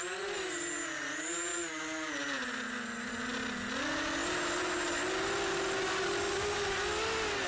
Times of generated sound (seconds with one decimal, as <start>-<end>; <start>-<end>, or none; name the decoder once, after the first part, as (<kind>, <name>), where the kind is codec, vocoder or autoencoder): none